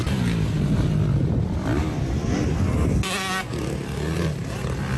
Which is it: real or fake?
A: real